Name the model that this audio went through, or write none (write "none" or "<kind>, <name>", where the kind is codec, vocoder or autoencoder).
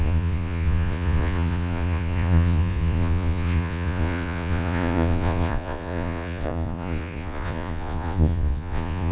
vocoder, Vocos